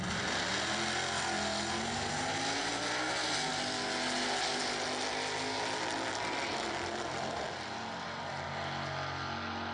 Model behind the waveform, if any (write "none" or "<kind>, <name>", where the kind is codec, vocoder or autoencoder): none